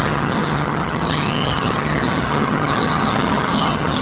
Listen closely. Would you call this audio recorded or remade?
remade